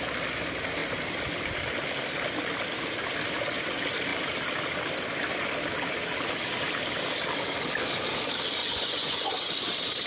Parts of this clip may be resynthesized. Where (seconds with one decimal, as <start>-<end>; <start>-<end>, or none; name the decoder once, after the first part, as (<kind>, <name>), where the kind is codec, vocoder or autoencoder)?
8.6-9.3 (vocoder, Vocos)